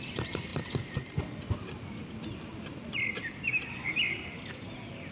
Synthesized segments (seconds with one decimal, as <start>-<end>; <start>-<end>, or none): none